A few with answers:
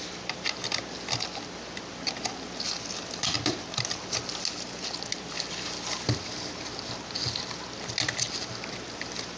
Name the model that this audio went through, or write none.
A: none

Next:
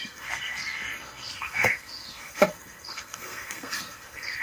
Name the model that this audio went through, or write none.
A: codec, SNAC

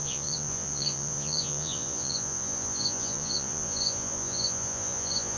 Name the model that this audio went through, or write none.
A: vocoder, Vocos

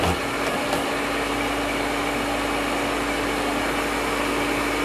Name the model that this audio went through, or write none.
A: none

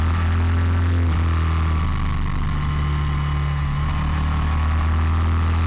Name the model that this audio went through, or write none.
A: none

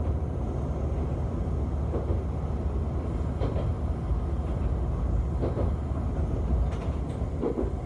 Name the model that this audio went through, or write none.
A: none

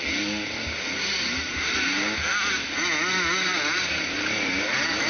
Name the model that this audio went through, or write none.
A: none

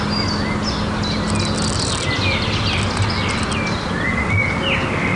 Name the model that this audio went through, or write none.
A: none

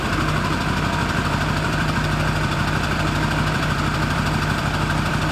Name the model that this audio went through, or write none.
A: vocoder, BigVGAN v2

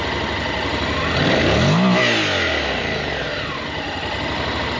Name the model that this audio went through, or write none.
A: none